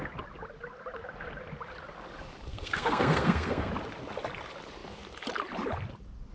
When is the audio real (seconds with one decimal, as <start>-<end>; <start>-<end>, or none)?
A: 0.0-2.5; 3.7-6.3